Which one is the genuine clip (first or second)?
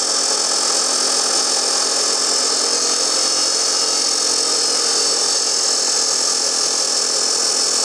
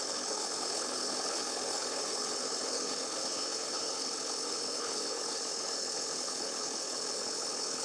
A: first